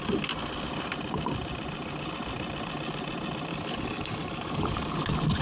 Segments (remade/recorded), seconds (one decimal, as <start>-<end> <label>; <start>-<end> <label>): 0.0-3.5 recorded; 3.5-5.0 remade; 5.0-5.4 recorded

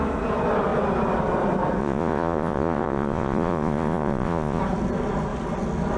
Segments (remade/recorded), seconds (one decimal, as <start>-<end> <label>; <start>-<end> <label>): 0.0-1.8 recorded; 1.8-4.6 remade; 4.6-6.0 recorded

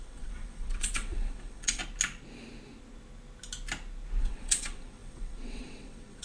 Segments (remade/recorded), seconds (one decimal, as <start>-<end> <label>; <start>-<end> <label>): 0.0-1.8 remade; 1.8-4.2 recorded; 4.2-6.2 remade

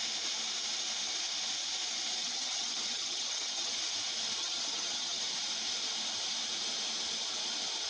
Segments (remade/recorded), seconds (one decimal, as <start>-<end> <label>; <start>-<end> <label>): 0.0-2.2 recorded; 2.2-3.7 remade; 3.7-4.4 recorded; 4.4-5.2 remade; 5.2-7.9 recorded

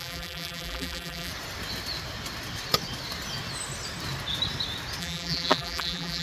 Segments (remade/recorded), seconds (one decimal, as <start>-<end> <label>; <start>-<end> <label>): 0.0-1.3 remade; 1.3-5.0 recorded; 5.0-6.2 remade

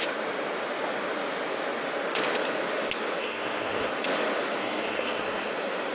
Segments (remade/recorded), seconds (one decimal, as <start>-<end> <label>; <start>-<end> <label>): 0.0-3.2 recorded; 3.2-3.9 remade; 3.9-4.6 recorded; 4.6-5.5 remade; 5.5-5.9 recorded

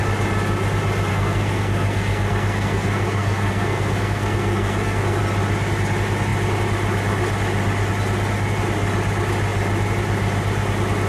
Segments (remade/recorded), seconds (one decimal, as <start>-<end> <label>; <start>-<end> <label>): 0.0-1.1 recorded; 1.1-5.2 remade; 5.2-11.1 recorded